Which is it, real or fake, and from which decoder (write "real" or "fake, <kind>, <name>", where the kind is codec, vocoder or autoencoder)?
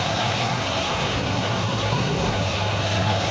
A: fake, codec, SNAC